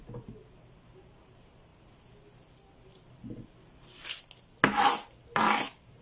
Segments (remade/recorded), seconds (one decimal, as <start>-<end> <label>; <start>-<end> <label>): 0.0-6.0 recorded